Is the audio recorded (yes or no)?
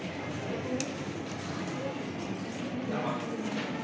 yes